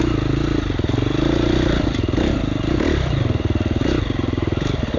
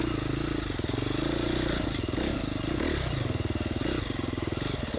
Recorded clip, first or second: second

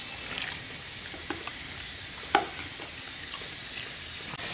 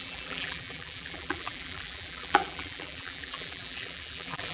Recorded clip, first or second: first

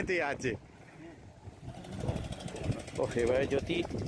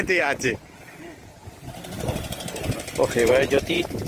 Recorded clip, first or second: first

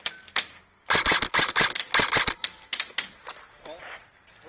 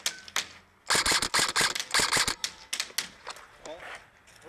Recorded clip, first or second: second